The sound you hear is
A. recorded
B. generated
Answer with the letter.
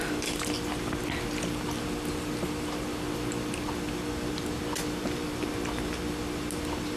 A